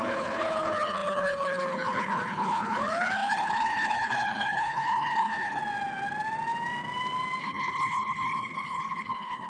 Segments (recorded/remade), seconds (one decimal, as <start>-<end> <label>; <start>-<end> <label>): 0.0-5.6 remade; 5.6-7.4 recorded; 7.4-9.5 remade